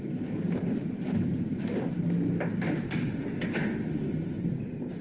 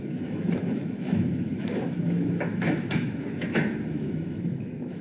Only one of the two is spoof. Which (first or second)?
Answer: second